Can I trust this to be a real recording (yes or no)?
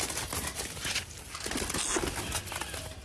yes